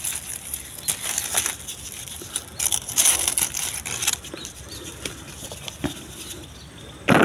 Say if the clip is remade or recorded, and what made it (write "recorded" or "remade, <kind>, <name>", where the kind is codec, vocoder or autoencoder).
recorded